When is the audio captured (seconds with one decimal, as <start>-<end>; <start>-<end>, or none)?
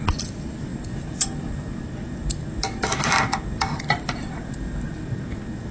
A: 0.0-5.7